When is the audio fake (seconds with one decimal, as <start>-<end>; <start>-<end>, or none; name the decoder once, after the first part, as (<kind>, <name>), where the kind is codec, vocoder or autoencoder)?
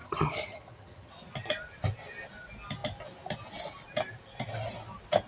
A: 0.0-1.1 (vocoder, HiFi-GAN)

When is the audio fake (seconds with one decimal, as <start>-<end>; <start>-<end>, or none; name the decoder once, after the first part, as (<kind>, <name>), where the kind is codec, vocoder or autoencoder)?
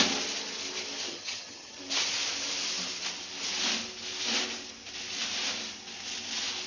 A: 1.1-1.8 (vocoder, HiFi-GAN)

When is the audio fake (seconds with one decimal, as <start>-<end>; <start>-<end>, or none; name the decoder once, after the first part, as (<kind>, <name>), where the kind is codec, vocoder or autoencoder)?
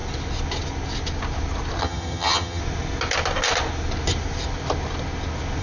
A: 1.8-2.6 (vocoder, HiFi-GAN)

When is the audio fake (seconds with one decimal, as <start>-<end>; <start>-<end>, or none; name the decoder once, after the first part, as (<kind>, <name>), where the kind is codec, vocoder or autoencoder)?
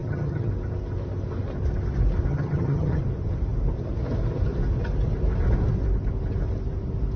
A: 0.0-0.5 (vocoder, HiFi-GAN); 2.3-3.0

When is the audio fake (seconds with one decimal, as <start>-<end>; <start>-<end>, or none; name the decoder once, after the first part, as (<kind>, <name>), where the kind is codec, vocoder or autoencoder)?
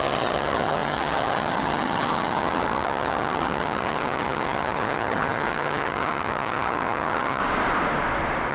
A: 0.0-7.4 (vocoder, HiFi-GAN)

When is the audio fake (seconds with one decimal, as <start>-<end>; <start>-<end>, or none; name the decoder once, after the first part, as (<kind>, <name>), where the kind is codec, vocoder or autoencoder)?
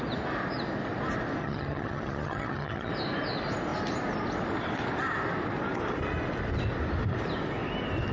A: 1.4-2.9 (vocoder, HiFi-GAN)